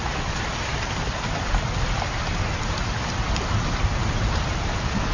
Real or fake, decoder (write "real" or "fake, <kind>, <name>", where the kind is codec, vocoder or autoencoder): real